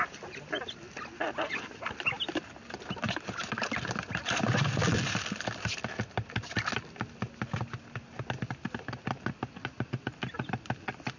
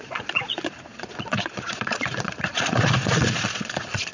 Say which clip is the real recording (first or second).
first